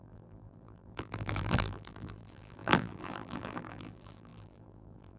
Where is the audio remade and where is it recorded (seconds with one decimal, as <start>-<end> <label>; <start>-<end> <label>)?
0.0-5.2 remade